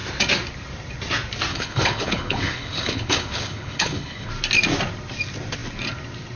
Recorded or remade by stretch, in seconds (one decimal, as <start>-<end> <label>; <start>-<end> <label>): 0.0-1.5 recorded; 1.5-4.3 remade; 4.3-6.4 recorded